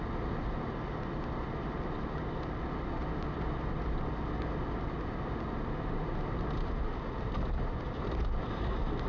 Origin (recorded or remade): recorded